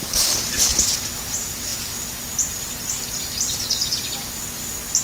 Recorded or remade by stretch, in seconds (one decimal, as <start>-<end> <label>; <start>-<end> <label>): 0.0-5.0 recorded